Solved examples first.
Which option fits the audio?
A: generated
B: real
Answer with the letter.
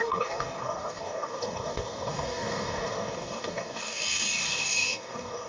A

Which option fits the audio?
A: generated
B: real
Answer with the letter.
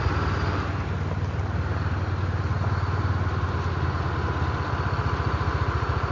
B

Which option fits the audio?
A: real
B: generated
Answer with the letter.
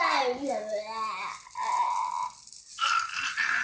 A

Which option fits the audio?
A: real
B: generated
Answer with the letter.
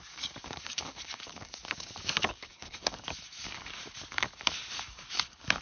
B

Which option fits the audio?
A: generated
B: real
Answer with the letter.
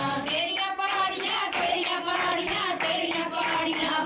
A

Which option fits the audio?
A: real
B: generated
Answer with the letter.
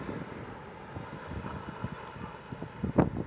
A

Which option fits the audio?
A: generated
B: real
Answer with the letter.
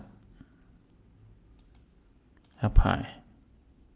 B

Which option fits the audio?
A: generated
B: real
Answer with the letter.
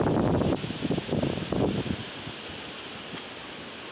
B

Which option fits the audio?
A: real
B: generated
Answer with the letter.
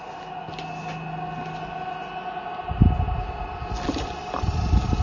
A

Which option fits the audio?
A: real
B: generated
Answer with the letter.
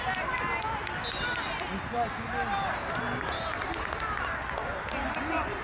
A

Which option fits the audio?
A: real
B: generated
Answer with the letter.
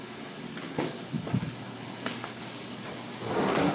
B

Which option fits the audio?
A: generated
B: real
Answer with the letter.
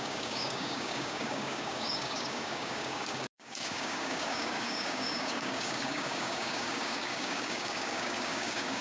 A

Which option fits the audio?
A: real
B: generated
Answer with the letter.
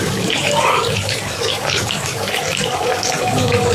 B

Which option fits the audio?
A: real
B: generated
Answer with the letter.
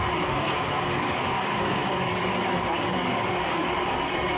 B